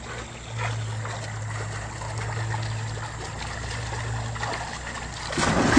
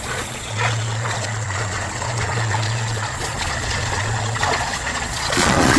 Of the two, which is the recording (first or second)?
first